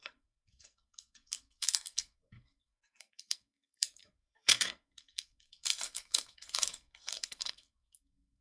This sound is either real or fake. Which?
fake